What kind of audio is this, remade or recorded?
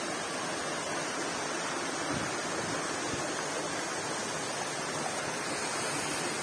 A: recorded